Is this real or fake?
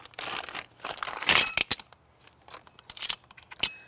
real